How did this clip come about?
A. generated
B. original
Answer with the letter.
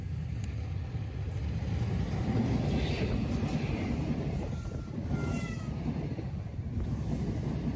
B